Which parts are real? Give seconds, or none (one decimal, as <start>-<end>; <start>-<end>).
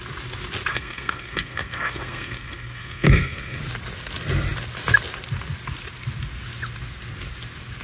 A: 0.0-0.7; 3.6-7.8